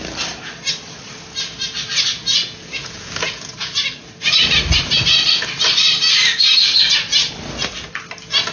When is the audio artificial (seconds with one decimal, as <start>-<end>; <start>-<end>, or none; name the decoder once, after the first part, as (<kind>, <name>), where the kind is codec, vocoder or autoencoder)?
2.2-3.8 (vocoder, Vocos)

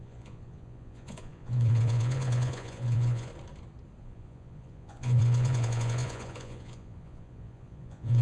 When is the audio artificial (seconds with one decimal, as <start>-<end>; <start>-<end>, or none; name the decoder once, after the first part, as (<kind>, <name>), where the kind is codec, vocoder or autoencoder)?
0.0-3.3 (vocoder, Vocos); 4.0-8.2